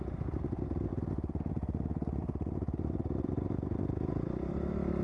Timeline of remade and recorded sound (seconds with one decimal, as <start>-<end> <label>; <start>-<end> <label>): 0.0-5.0 recorded